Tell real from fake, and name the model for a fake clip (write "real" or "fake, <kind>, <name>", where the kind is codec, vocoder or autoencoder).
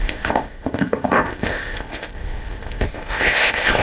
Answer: fake, codec, ZipCodec